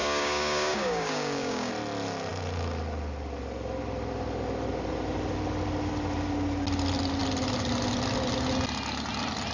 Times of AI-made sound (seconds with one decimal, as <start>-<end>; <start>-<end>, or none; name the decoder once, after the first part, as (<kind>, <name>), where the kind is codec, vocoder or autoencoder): 0.0-1.7 (codec, DAC)